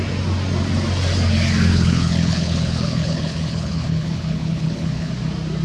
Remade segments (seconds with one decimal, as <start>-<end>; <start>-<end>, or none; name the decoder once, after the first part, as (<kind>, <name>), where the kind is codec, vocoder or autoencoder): 1.7-5.1 (codec, HILCodec)